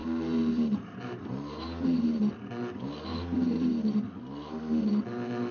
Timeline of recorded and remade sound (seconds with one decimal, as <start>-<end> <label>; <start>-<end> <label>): 0.0-2.3 remade; 2.3-3.1 recorded; 3.1-3.7 remade; 3.7-5.5 recorded